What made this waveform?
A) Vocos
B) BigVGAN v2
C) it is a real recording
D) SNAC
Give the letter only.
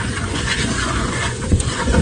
A